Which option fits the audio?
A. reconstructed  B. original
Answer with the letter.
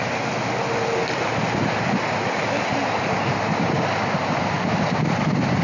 B